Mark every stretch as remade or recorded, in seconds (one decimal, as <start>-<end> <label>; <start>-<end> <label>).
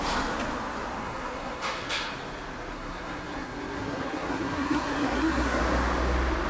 0.0-1.0 recorded; 1.0-2.1 remade; 2.1-2.7 recorded; 2.7-5.6 remade; 5.6-6.5 recorded